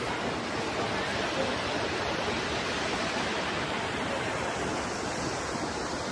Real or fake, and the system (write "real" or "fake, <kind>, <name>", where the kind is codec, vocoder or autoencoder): real